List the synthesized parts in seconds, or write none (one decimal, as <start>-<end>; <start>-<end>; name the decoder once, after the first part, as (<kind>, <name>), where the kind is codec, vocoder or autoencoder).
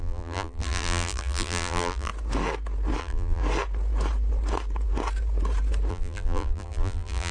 0.0-2.1 (vocoder, BigVGAN v2); 3.0-3.4; 5.9-7.3